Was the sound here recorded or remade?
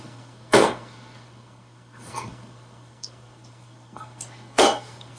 remade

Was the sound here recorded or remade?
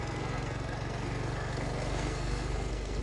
remade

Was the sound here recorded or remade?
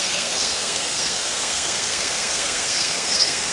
remade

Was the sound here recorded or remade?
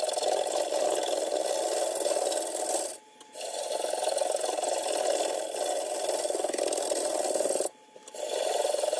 recorded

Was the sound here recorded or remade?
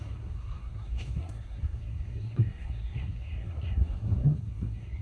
remade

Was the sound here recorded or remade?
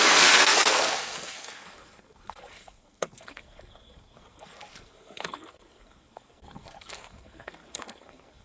remade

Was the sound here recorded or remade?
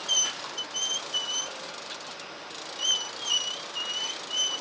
recorded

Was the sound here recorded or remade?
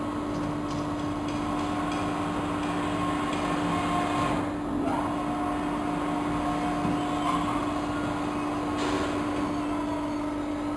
recorded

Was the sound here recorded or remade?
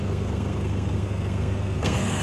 remade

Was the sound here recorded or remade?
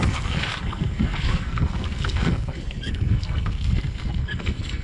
remade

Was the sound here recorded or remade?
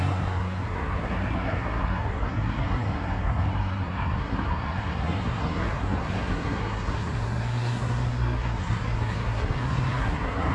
remade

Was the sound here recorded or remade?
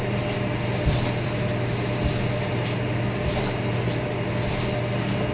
recorded